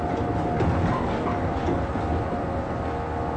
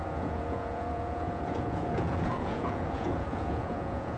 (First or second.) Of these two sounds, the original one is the first